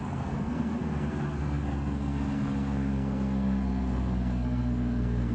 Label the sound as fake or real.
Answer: fake